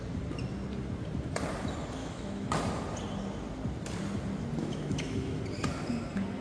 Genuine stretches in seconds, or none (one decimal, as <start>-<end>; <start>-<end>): 0.0-2.0; 2.5-4.6; 5.4-6.4